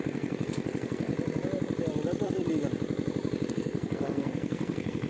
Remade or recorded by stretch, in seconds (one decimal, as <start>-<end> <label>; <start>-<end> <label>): 0.0-1.1 remade; 1.1-3.5 recorded; 3.5-5.1 remade